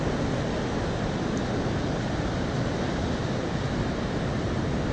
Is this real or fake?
real